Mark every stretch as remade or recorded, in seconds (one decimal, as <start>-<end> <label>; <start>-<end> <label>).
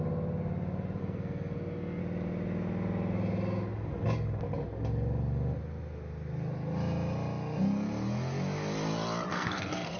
0.0-1.0 recorded; 1.0-2.0 remade; 2.0-9.3 recorded; 9.3-10.0 remade